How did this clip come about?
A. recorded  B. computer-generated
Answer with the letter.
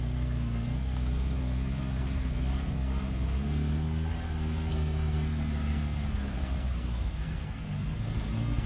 B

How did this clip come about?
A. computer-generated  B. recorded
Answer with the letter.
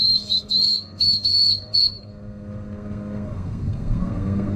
A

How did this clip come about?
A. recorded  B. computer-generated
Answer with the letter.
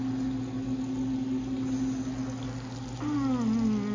A